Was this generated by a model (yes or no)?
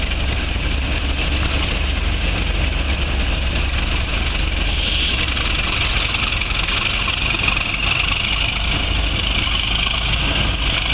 no